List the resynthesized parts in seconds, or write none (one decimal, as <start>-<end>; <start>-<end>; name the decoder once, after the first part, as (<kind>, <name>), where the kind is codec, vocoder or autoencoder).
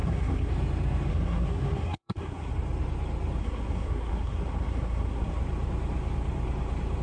0.0-0.5 (codec, SNAC); 1.1-2.5; 3.4-5.4